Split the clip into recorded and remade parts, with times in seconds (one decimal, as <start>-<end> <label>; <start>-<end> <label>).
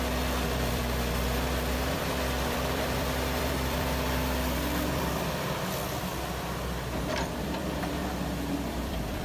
0.0-6.1 remade; 6.1-7.5 recorded; 7.5-8.0 remade; 8.0-8.7 recorded; 8.7-9.2 remade